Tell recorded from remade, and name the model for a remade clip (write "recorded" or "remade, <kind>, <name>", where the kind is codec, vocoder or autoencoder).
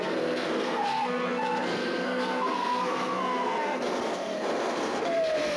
remade, codec, SNAC